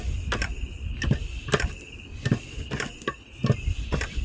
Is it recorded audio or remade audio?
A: recorded